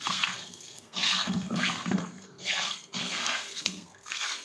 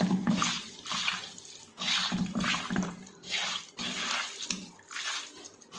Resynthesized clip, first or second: first